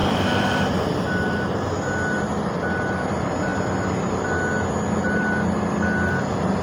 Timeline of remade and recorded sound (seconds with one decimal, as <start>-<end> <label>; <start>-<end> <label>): 0.0-1.8 remade; 1.8-6.6 recorded